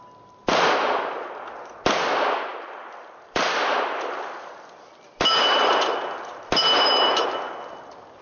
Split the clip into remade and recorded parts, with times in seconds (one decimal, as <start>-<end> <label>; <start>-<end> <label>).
0.0-0.4 recorded; 0.4-1.5 remade; 1.5-2.5 recorded; 2.5-7.1 remade; 7.1-8.2 recorded